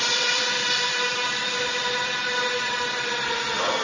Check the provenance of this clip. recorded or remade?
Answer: recorded